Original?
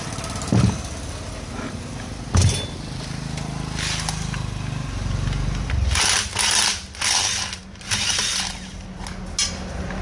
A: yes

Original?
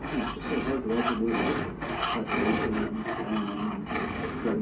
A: yes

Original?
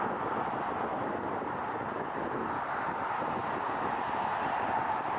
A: yes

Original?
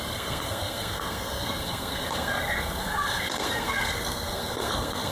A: no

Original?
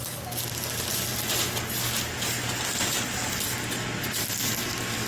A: yes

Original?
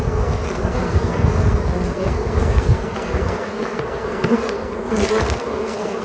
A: no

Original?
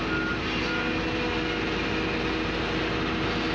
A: yes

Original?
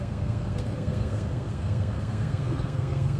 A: no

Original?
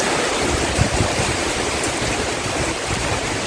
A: no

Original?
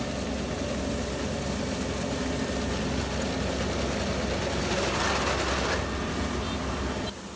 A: yes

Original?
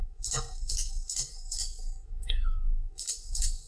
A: no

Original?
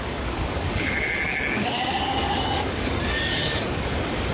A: no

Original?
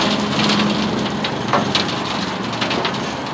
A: yes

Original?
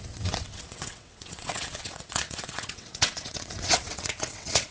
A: no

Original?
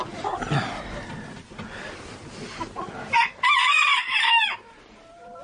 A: yes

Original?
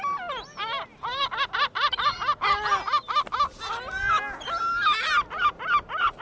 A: yes